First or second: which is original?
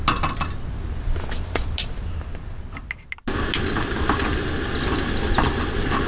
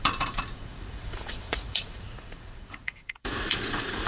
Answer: first